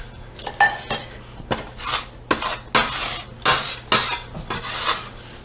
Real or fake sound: real